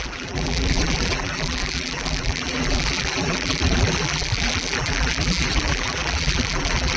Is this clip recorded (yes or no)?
no